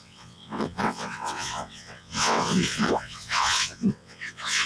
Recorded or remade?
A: remade